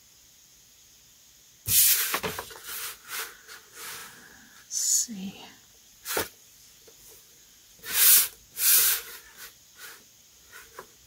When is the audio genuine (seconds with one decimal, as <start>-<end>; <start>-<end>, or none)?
0.0-5.9; 7.8-8.7; 9.2-11.1